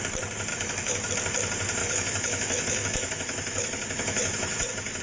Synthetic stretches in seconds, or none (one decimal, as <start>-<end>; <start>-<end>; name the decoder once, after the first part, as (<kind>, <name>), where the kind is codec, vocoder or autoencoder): 0.5-1.1 (autoencoder, DAC-VAE); 1.8-5.0